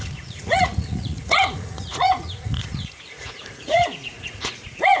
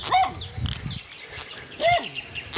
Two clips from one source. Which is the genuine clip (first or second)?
second